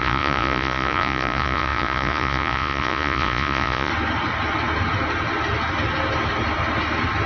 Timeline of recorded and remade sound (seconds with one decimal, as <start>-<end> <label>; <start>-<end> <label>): 0.0-3.9 remade; 3.9-7.3 recorded